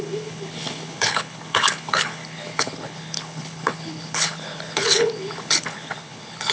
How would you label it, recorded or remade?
remade